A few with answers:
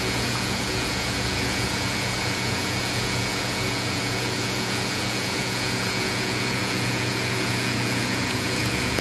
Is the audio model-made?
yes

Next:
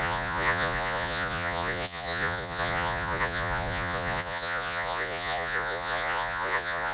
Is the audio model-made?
yes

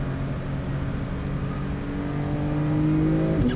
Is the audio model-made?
no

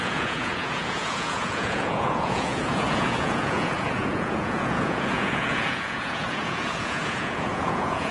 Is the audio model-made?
yes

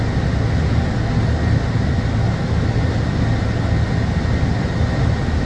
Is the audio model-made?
no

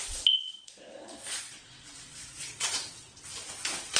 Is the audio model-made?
yes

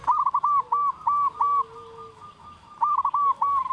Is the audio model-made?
no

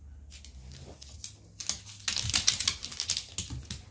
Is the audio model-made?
no